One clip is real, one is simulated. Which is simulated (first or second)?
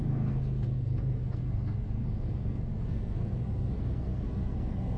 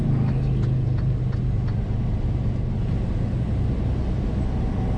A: first